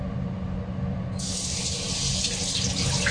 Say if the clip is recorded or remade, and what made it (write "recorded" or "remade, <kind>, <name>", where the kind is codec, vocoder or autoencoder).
recorded